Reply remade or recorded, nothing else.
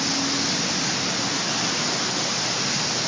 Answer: recorded